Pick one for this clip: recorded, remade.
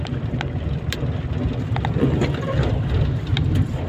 recorded